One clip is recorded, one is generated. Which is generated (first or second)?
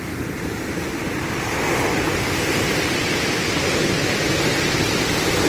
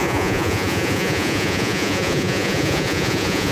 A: second